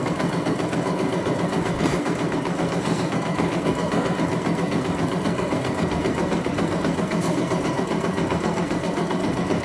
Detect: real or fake fake